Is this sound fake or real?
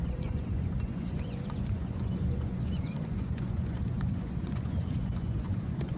fake